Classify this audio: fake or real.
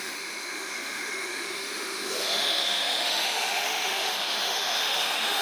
fake